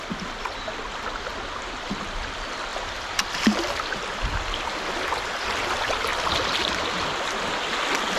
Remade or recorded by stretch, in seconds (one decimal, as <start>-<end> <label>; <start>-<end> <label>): 0.0-1.3 recorded; 1.3-1.9 remade; 1.9-2.7 recorded; 2.7-4.0 remade; 4.0-6.1 recorded; 6.1-6.7 remade; 6.7-8.2 recorded